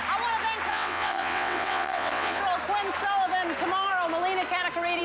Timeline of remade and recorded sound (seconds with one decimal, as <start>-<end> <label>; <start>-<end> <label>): 0.0-0.7 recorded; 0.7-2.4 remade; 2.4-5.0 recorded